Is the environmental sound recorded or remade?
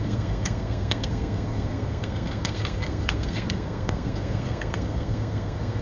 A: remade